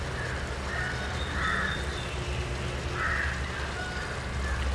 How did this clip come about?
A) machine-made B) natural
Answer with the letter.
B